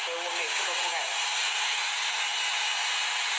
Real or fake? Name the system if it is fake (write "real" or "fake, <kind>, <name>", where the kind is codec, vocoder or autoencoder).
real